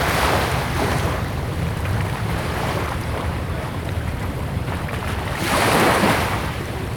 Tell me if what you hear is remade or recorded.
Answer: remade